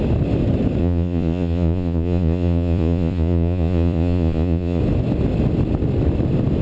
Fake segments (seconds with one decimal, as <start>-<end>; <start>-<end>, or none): 0.8-4.8